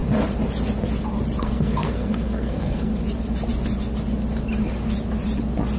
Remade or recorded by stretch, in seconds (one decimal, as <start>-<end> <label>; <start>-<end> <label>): 0.0-1.4 recorded; 1.4-2.9 remade; 2.9-5.8 recorded